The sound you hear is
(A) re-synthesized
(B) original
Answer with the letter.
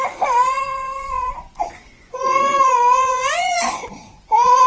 A